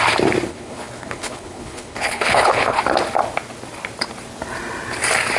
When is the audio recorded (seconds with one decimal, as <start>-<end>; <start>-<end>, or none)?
0.0-0.5; 2.8-5.4